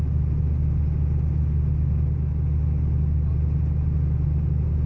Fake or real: real